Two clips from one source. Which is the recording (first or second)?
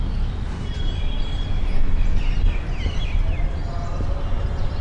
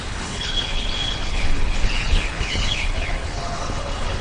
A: first